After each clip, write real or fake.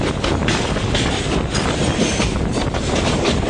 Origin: real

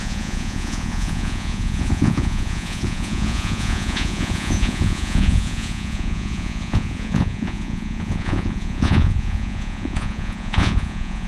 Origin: fake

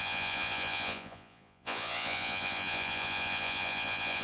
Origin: fake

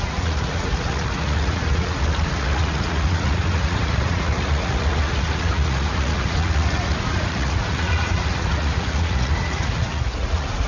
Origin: fake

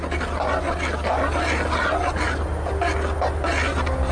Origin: real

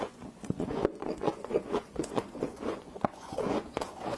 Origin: fake